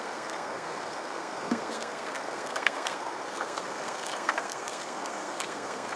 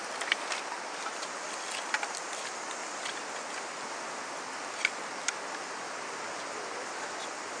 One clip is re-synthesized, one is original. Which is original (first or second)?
second